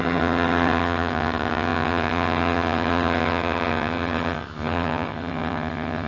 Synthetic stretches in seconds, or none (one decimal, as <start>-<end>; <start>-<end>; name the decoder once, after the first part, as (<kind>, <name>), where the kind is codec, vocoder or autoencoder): 0.0-6.1 (vocoder, HiFi-GAN)

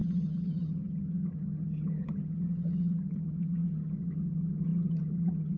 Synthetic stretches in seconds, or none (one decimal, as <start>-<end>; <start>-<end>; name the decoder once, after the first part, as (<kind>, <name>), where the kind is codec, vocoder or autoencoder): 0.0-5.6 (vocoder, HiFi-GAN)

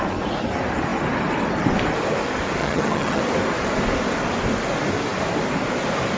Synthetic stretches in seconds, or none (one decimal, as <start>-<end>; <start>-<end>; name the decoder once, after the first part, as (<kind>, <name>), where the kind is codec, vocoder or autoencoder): 2.6-3.2 (vocoder, HiFi-GAN)